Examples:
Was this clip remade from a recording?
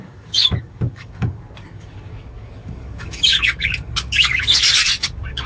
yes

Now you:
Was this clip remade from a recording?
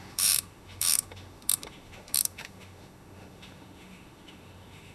yes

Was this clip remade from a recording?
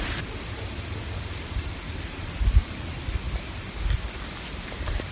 yes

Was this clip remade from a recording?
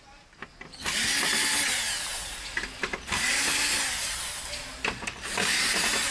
no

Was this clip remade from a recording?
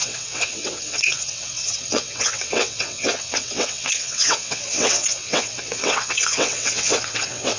yes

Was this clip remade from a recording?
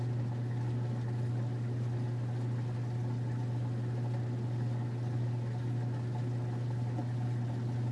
no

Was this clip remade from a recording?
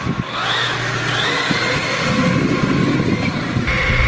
no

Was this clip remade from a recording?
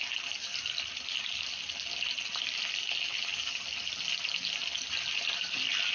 no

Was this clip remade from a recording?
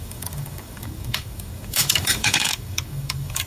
yes